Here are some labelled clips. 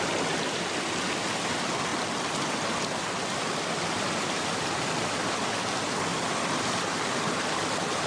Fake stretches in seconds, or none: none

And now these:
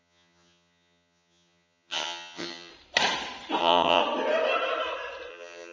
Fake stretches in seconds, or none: 0.0-2.7 (vocoder, HiFi-GAN); 3.6-4.0; 5.3-5.7

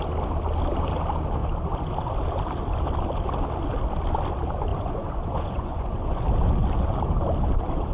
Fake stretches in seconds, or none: 4.7-6.2 (vocoder, Vocos)